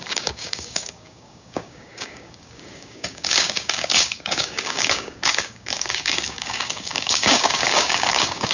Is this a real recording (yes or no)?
no